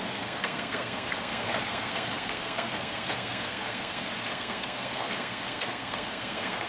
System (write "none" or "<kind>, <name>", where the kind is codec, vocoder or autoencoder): codec, SNAC